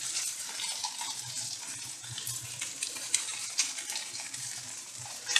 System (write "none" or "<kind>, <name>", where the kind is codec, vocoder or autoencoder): vocoder, BigVGAN v2